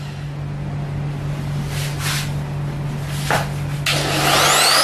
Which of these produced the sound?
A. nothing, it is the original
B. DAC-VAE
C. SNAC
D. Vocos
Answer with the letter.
A